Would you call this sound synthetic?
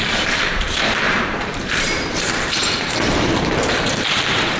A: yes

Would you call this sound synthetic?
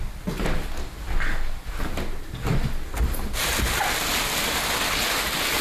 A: no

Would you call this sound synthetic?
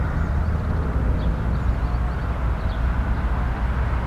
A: no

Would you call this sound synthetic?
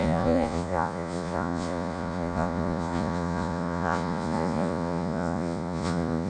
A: yes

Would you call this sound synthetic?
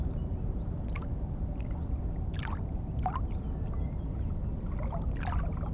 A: no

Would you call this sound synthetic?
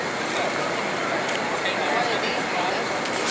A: no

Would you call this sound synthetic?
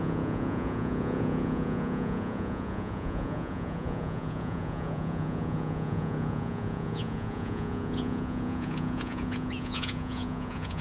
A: yes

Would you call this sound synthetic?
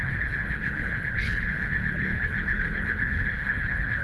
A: yes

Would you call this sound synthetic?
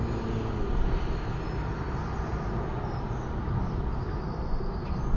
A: no